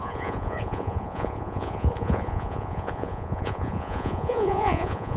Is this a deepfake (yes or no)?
yes